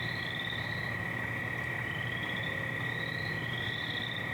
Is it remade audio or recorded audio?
recorded